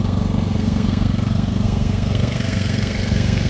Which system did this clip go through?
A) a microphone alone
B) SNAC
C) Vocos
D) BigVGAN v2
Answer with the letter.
B